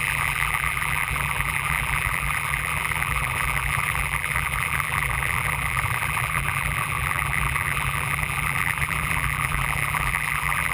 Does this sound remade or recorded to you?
remade